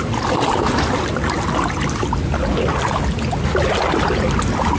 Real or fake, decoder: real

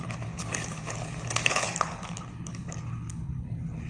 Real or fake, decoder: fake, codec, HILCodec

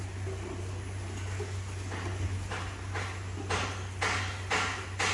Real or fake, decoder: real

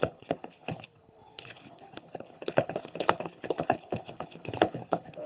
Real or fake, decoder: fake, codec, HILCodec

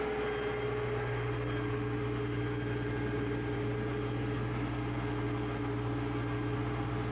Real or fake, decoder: real